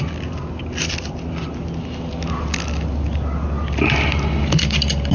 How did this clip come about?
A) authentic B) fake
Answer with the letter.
A